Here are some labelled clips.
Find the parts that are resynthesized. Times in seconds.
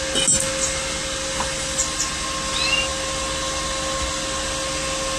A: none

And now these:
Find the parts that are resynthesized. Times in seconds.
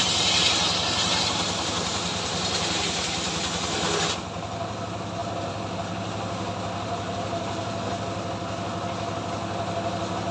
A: 2.1-3.9 (vocoder, BigVGAN v2); 5.2-8.0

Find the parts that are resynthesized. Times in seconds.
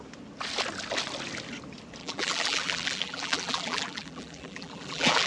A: 2.0-5.3 (vocoder, BigVGAN v2)